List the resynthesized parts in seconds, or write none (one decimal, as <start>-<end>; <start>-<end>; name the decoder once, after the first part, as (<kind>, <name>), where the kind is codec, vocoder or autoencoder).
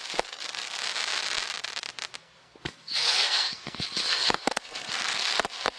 0.0-0.8 (codec, SNAC); 2.2-5.8